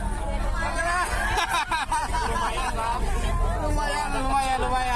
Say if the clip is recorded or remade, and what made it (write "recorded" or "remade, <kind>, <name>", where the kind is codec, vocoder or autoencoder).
recorded